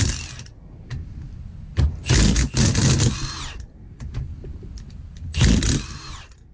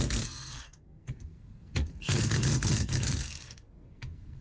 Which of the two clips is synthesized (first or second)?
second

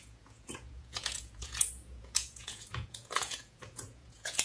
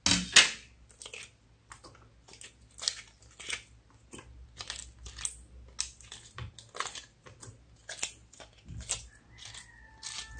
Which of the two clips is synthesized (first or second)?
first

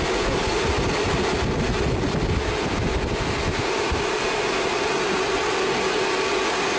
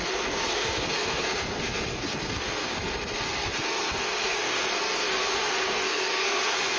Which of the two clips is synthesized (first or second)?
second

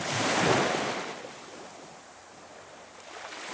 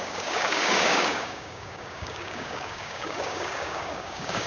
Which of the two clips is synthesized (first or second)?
second